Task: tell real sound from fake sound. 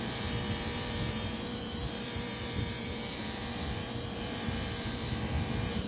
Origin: fake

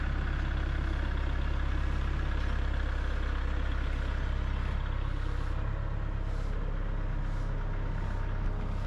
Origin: real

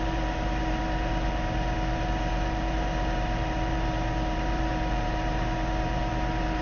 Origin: fake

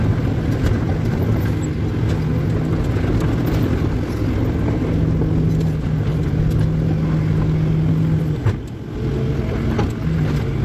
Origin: real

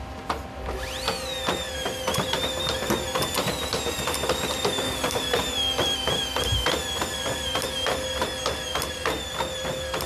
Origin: real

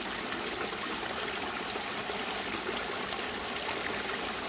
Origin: real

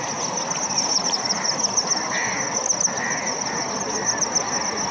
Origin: real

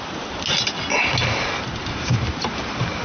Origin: real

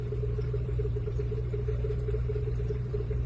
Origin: fake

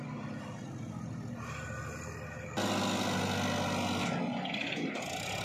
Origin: real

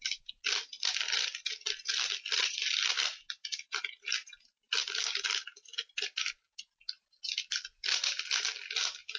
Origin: real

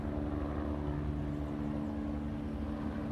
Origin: real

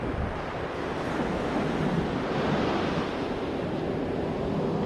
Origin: real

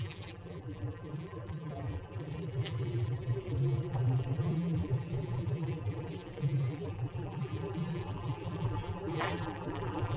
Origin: fake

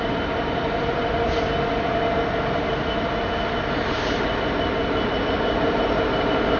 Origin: fake